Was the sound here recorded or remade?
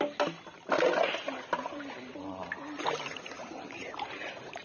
recorded